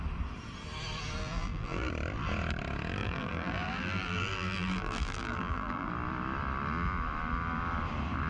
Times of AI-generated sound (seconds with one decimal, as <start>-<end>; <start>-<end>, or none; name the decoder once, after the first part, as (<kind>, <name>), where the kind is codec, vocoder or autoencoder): 1.2-1.9 (vocoder, BigVGAN v2); 3.0-5.9